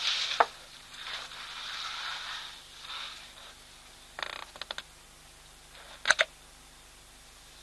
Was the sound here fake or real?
real